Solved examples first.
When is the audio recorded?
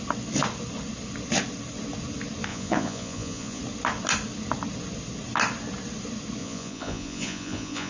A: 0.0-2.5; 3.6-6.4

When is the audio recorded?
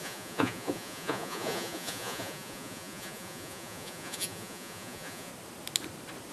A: 5.3-6.3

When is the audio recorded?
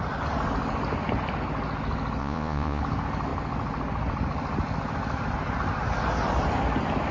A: 0.0-2.2; 2.8-7.1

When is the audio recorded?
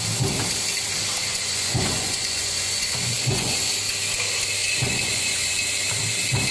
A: 0.0-1.2; 3.7-4.6; 5.5-6.5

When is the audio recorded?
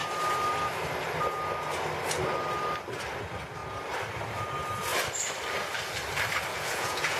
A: 0.0-6.5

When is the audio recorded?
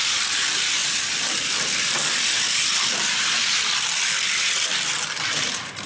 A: 0.0-5.9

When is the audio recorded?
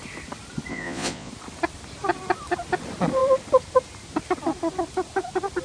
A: 0.0-0.7; 1.3-5.6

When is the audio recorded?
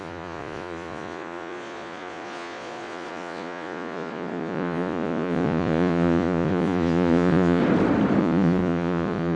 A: 7.6-8.2